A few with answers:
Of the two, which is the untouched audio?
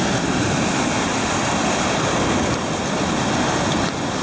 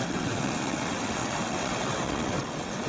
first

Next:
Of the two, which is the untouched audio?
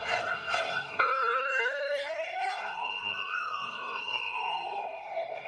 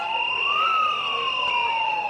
second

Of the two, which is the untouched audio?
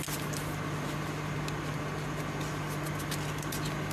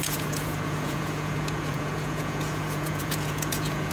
first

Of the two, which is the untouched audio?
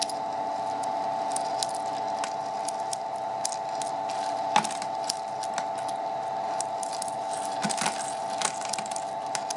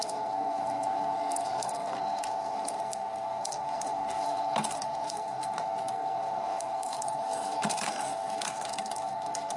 first